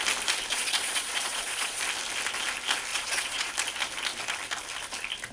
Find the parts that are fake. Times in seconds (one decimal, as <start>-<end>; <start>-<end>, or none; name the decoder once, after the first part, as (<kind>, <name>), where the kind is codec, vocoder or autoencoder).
0.5-1.8 (vocoder, Vocos); 2.9-3.5